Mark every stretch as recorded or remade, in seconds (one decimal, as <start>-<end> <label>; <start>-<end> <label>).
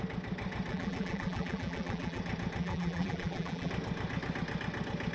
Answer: 0.0-0.7 recorded; 0.7-2.2 remade; 2.2-2.6 recorded; 2.6-3.7 remade; 3.7-5.1 recorded